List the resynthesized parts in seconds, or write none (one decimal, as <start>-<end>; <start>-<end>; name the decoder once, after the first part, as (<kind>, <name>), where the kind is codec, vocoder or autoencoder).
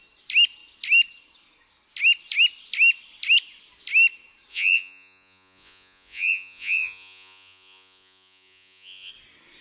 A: 4.5-9.1 (vocoder, Vocos)